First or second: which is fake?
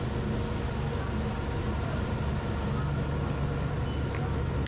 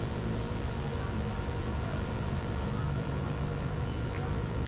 second